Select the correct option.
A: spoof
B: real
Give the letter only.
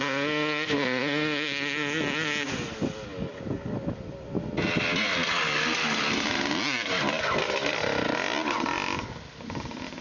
B